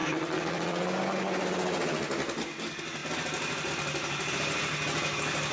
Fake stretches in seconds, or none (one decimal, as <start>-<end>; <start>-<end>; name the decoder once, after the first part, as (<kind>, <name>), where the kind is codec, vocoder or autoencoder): none